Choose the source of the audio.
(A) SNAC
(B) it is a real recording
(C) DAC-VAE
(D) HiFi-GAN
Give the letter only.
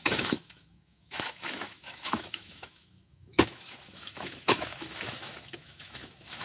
C